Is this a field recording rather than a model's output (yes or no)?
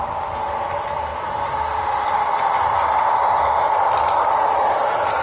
no